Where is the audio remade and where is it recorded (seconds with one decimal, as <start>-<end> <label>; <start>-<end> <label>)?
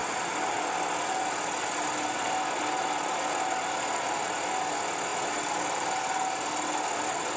0.0-7.4 recorded